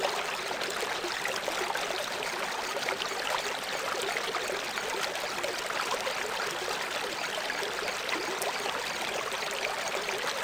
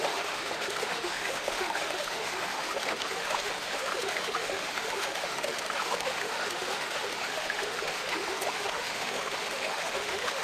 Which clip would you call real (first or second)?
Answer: first